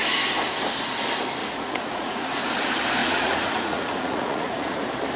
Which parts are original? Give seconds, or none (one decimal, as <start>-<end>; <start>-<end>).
0.0-1.4; 2.4-3.0; 4.8-5.2